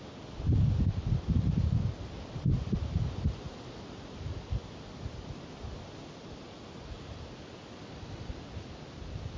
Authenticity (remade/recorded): recorded